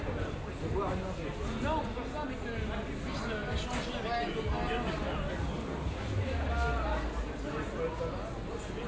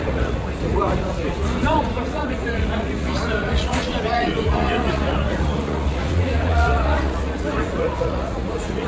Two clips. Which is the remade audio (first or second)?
second